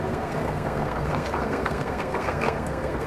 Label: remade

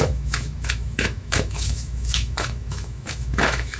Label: remade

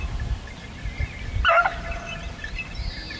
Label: recorded